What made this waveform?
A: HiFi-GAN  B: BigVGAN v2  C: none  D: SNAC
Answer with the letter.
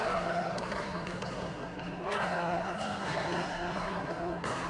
D